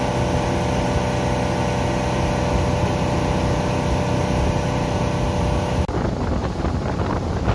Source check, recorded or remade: recorded